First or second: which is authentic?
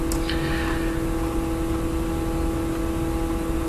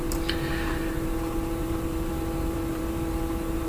first